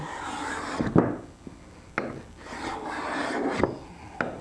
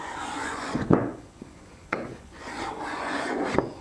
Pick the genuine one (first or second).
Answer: first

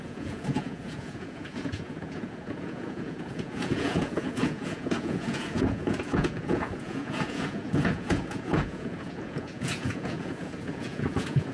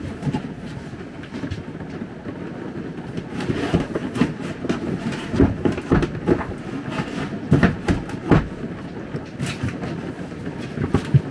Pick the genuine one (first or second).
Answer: second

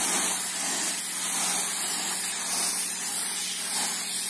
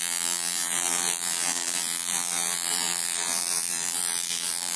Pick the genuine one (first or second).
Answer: first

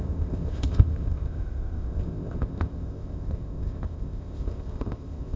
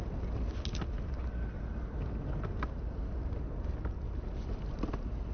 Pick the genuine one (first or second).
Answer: second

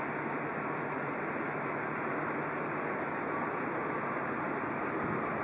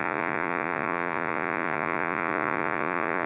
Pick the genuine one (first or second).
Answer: first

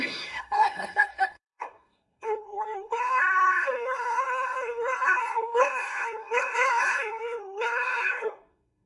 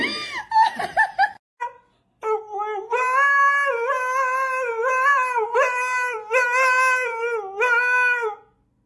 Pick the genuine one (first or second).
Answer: second